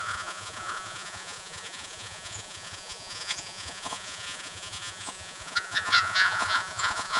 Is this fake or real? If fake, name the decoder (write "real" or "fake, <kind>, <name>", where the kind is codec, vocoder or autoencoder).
fake, vocoder, Vocos